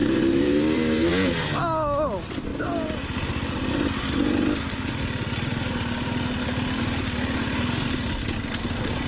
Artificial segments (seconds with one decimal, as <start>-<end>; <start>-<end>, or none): 0.0-1.1; 2.5-3.7